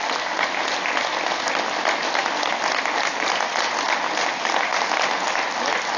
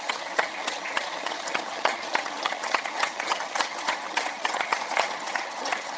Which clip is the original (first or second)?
first